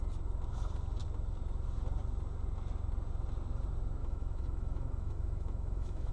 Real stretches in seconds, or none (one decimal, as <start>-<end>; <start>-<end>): 0.0-4.0